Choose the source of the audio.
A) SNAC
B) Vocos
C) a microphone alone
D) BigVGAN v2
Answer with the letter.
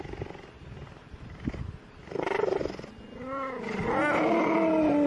C